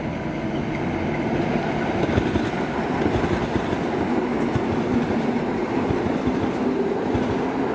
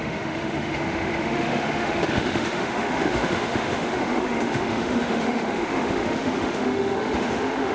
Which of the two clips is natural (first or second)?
first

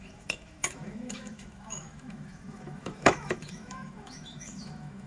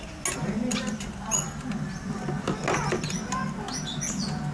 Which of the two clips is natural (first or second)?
second